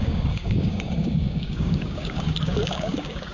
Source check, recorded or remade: remade